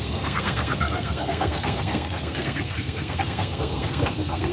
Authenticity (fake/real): fake